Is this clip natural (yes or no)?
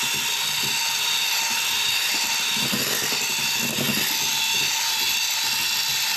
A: yes